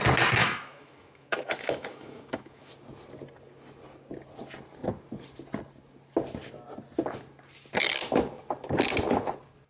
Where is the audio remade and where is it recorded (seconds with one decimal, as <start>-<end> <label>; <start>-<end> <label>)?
0.0-0.4 recorded; 0.4-2.7 remade; 2.7-9.7 recorded